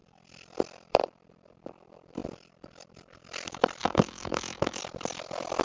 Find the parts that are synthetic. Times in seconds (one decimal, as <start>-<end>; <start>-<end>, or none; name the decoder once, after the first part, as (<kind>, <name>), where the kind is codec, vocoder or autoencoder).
3.8-4.8 (autoencoder, DAC-VAE)

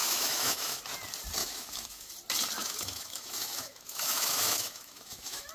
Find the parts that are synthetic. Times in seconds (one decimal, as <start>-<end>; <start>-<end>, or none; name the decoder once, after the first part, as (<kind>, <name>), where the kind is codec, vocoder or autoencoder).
0.0-0.8 (autoencoder, DAC-VAE); 1.4-2.1; 2.6-5.5

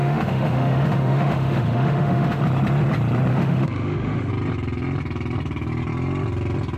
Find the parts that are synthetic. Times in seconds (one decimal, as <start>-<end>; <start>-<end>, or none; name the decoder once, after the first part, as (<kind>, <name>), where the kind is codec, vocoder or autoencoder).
0.0-2.4 (autoencoder, DAC-VAE); 3.3-4.3

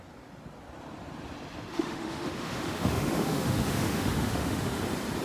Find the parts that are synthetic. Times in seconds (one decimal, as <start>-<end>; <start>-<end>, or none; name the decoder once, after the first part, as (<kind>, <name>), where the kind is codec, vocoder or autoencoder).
1.7-4.8 (autoencoder, DAC-VAE)